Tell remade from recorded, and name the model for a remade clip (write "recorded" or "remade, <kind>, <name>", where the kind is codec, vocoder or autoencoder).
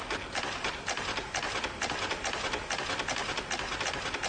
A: recorded